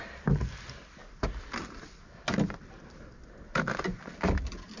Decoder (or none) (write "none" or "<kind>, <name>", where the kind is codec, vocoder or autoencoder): none